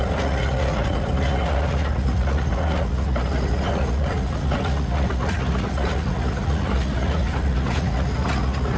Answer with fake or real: fake